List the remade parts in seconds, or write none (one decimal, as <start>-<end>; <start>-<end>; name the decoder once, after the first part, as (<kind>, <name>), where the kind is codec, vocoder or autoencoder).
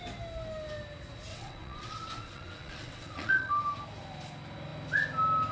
1.3-3.5 (vocoder, WaveNeXt)